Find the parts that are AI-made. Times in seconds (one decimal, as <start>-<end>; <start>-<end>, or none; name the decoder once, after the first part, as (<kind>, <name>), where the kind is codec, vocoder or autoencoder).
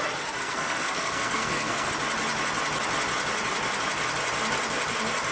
0.4-1.9 (codec, SNAC)